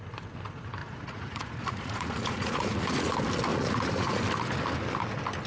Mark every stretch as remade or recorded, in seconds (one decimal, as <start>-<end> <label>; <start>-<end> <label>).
0.0-0.8 recorded; 0.8-3.1 remade; 3.1-3.5 recorded; 3.5-4.2 remade; 4.2-5.5 recorded